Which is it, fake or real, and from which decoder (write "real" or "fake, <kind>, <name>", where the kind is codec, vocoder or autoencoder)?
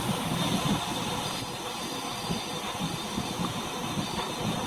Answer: real